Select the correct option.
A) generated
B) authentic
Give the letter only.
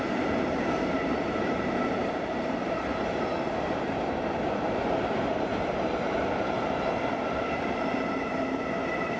A